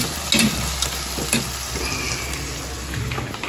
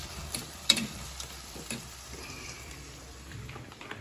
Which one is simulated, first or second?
second